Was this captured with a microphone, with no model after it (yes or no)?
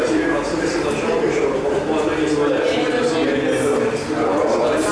yes